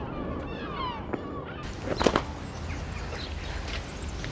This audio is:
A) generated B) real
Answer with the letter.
B